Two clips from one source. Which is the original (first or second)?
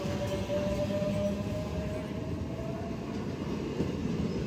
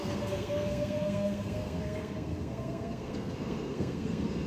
first